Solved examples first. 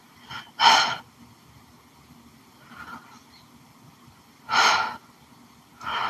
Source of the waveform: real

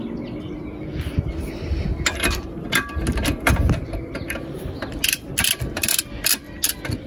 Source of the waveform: real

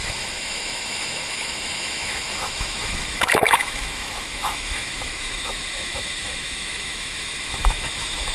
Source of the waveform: fake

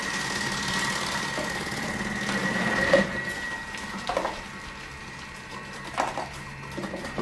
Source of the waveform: real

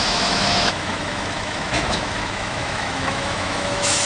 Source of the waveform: fake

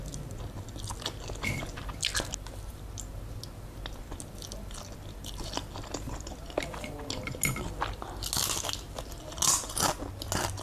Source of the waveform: real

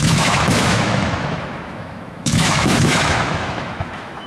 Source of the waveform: fake